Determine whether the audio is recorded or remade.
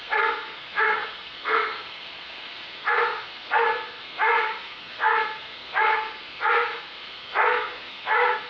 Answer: remade